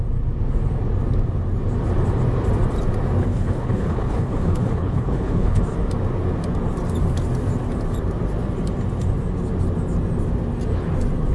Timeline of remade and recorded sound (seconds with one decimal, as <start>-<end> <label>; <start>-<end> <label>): 0.0-3.2 recorded; 3.2-5.6 remade; 5.6-11.3 recorded